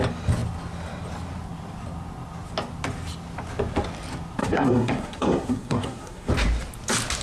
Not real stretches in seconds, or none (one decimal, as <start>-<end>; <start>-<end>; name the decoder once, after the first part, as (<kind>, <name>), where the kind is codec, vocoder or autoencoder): 4.4-6.3 (codec, SNAC)